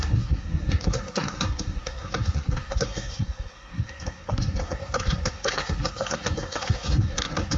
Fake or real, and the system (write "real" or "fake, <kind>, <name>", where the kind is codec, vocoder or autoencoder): fake, codec, SNAC